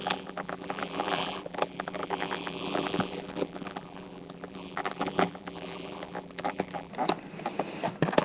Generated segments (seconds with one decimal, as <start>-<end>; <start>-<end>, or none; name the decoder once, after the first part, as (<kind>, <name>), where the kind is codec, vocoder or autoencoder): 0.0-6.9 (vocoder, BigVGAN v2)

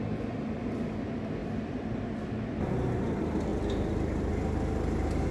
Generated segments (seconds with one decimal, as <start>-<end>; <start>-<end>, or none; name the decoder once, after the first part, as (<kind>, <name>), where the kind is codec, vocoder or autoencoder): 1.4-2.3 (vocoder, BigVGAN v2); 3.5-4.3

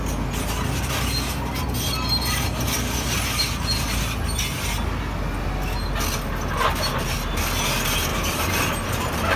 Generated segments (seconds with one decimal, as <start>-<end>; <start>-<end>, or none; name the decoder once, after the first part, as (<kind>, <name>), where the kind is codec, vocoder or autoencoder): 8.1-9.4 (vocoder, BigVGAN v2)

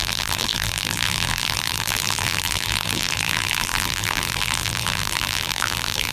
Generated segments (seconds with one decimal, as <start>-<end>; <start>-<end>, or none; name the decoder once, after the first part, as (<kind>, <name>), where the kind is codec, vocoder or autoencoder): 0.0-6.1 (vocoder, BigVGAN v2)